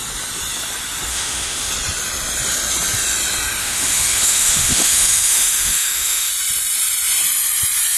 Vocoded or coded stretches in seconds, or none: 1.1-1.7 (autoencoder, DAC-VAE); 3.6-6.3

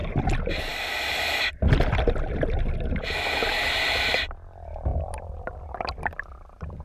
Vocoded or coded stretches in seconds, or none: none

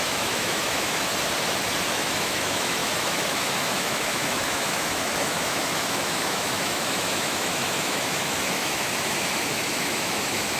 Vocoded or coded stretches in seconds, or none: 0.0-1.1 (autoencoder, DAC-VAE); 1.9-10.6